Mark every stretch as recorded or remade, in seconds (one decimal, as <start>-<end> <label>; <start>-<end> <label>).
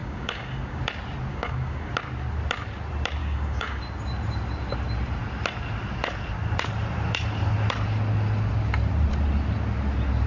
0.0-0.8 remade; 0.8-1.3 recorded; 1.3-1.9 remade; 1.9-3.2 recorded; 3.2-3.8 remade; 3.8-10.3 recorded